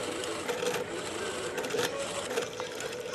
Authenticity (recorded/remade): recorded